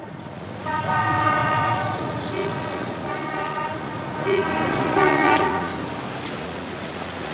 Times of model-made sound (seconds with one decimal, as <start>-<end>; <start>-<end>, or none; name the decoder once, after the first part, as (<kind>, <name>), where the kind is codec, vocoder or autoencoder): 0.0-5.7 (vocoder, Vocos); 6.4-7.3